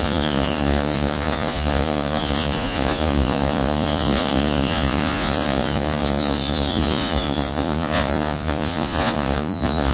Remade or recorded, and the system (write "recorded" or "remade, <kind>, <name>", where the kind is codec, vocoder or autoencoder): remade, vocoder, Vocos